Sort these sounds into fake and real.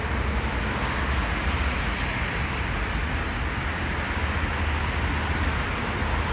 real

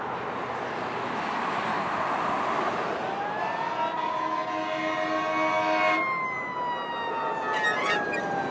real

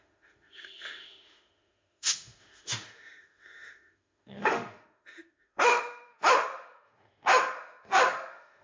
fake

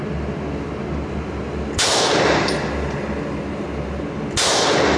real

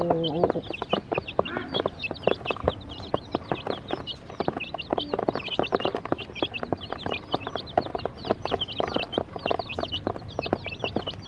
real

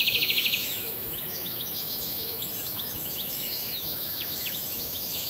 fake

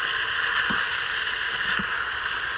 real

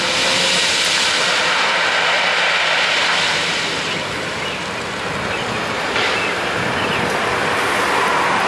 real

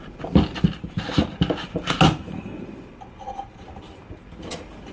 real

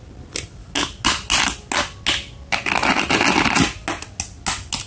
real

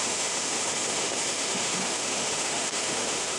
fake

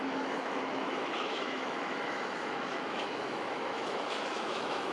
fake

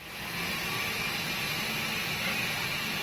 real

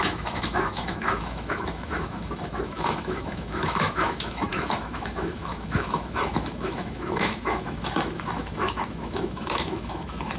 fake